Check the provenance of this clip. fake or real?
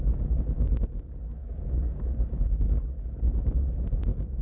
real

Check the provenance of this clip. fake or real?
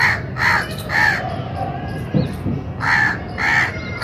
real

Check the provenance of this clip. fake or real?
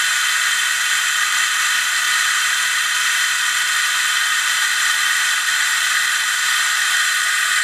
fake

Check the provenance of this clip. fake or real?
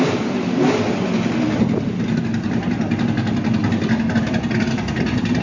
real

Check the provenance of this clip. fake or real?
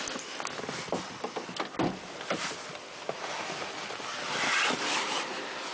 real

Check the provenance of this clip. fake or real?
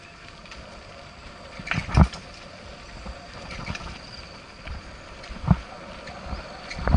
fake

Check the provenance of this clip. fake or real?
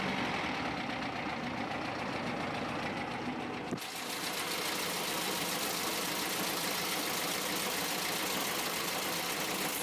real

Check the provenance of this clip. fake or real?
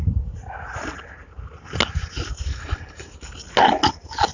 real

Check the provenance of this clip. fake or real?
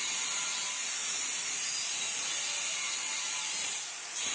fake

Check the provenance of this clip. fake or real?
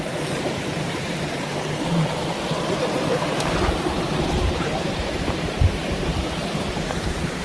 fake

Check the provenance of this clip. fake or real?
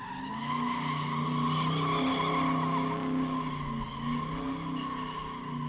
real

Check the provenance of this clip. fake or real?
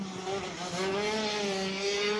real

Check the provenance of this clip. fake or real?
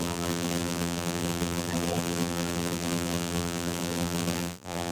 fake